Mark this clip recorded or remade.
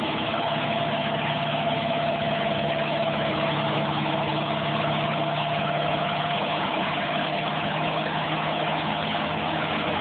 remade